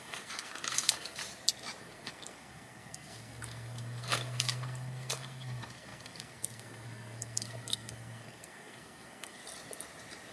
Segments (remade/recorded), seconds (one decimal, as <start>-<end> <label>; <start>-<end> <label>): 0.0-1.2 remade; 1.2-1.8 recorded; 1.8-9.4 remade; 9.4-10.3 recorded